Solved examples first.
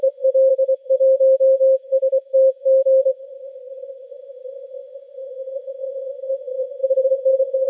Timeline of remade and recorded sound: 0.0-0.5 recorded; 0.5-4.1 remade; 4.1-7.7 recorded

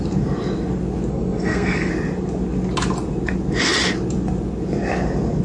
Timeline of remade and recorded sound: 0.0-1.1 recorded; 1.1-1.9 remade; 1.9-5.4 recorded

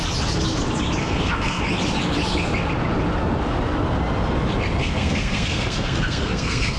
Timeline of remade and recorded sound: 0.0-1.0 recorded; 1.0-1.6 remade; 1.6-4.8 recorded; 4.8-6.8 remade

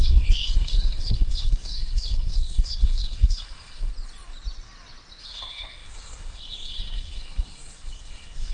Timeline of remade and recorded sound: 0.0-3.9 remade; 3.9-5.2 recorded; 5.2-8.5 remade

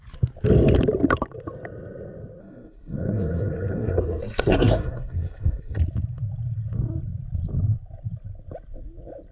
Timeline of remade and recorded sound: 0.0-2.4 recorded; 2.4-5.8 remade; 5.8-9.3 recorded

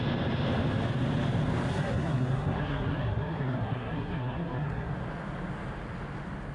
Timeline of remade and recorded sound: 0.0-1.7 recorded; 1.7-4.9 remade; 4.9-6.5 recorded